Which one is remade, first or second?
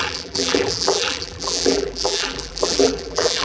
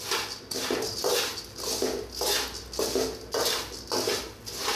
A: first